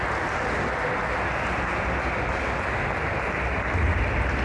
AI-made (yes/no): no